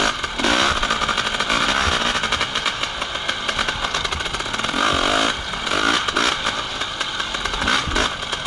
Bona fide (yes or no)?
yes